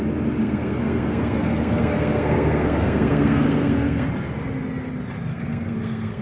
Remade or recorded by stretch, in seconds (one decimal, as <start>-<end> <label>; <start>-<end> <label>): 0.0-0.4 recorded; 0.4-4.1 remade; 4.1-5.3 recorded; 5.3-6.2 remade